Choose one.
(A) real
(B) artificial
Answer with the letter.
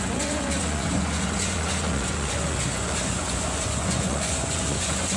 B